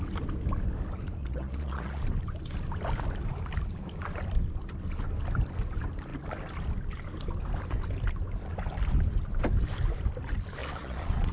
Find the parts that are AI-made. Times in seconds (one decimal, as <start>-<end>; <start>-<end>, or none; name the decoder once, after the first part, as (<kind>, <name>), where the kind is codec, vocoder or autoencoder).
1.2-2.0 (vocoder, Vocos); 10.6-11.3